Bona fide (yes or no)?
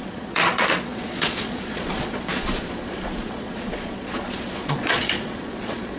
no